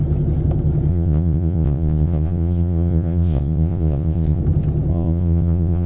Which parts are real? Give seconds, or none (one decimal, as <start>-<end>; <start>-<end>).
0.0-0.9; 4.4-4.9